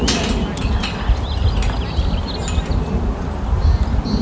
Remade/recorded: recorded